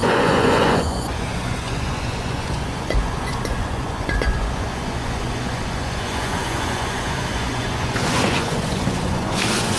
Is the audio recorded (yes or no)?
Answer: no